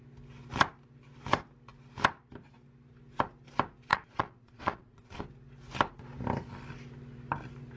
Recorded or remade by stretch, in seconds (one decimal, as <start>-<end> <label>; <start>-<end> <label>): 0.0-3.9 recorded; 3.9-5.2 remade; 5.2-7.8 recorded